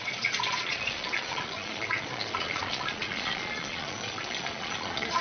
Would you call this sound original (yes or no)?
no